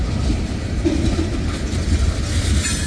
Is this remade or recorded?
remade